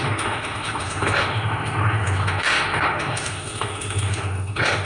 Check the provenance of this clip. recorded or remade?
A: remade